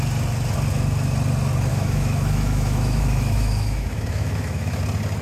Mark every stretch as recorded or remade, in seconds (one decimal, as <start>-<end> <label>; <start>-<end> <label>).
0.0-1.7 recorded; 1.7-4.8 remade; 4.8-5.2 recorded